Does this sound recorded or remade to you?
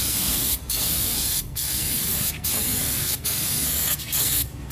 remade